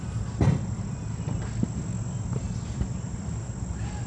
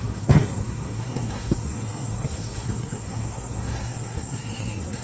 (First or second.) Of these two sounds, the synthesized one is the second